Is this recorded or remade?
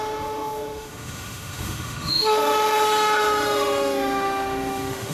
remade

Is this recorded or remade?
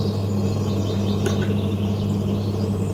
recorded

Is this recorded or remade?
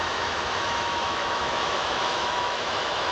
remade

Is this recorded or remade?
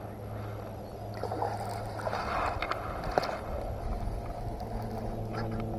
recorded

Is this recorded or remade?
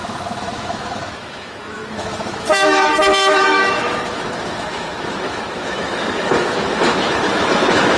remade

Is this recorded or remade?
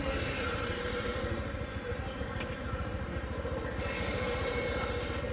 recorded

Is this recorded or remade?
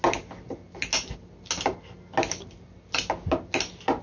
recorded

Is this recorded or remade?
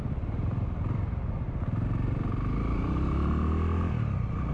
recorded